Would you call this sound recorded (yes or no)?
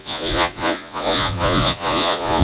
no